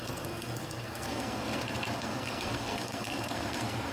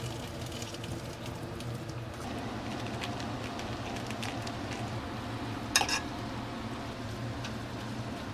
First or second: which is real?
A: second